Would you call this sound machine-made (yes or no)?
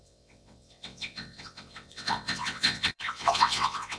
yes